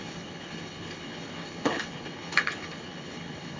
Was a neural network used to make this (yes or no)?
yes